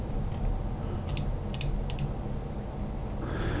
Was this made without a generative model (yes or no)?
yes